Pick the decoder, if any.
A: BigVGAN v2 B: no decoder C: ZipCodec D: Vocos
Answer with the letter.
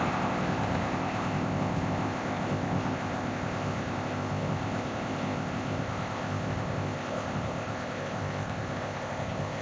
C